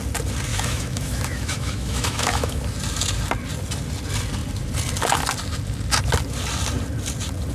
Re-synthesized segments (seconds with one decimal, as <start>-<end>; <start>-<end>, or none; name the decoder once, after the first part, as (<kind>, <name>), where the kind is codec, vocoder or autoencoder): 0.5-2.6 (autoencoder, DAC-VAE)